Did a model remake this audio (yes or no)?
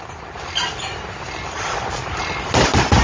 no